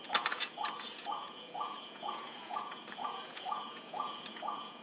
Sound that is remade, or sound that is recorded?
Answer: remade